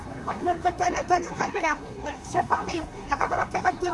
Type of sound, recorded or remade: remade